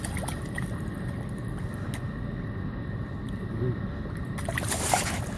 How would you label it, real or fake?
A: real